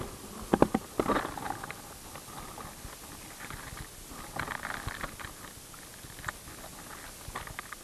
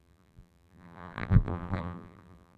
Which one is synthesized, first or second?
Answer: second